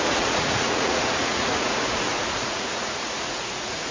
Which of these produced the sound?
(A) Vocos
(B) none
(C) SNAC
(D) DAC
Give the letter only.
A